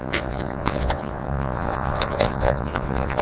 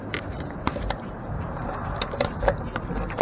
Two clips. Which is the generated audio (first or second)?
first